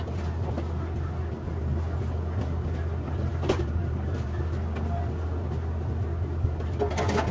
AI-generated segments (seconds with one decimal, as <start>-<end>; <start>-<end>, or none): 3.3-4.4